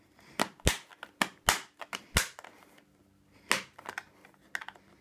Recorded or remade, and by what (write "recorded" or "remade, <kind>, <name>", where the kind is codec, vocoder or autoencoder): recorded